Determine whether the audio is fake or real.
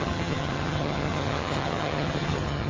fake